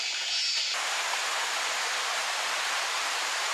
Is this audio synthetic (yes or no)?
no